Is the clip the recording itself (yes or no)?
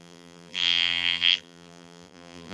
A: no